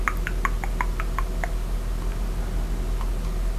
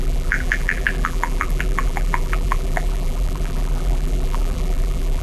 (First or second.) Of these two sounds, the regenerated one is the second